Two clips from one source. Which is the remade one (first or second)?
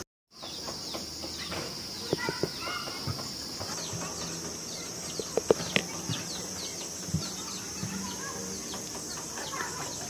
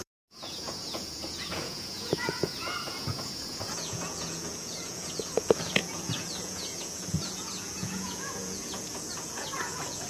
second